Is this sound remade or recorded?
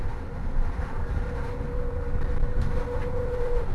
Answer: remade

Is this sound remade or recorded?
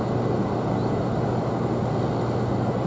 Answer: recorded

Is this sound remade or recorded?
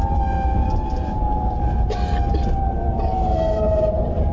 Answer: remade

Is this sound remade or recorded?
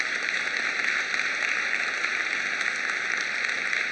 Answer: recorded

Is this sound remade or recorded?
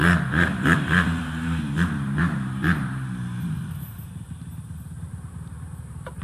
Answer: remade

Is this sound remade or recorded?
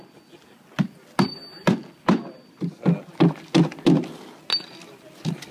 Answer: recorded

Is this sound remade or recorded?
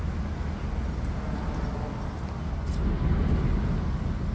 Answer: recorded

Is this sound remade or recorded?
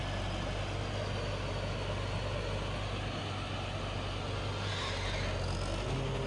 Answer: recorded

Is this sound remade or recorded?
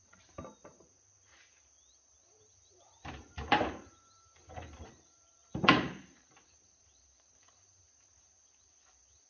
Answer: remade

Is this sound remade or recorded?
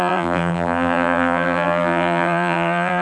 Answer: remade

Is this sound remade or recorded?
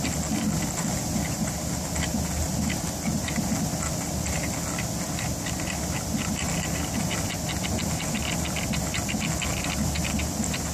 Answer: recorded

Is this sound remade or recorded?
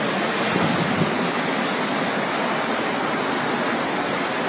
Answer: recorded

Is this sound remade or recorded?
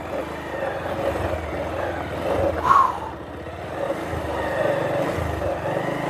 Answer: recorded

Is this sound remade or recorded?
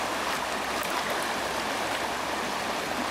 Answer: recorded